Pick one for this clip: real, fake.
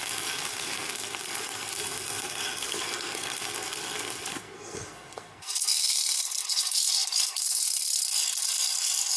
fake